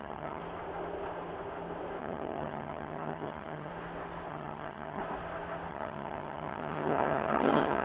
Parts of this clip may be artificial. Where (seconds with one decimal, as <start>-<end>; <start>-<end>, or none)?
0.0-0.4; 2.0-3.7; 4.3-5.0; 5.7-7.8